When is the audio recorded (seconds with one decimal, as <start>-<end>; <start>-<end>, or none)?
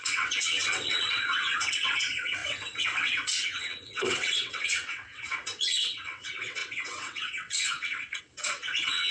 none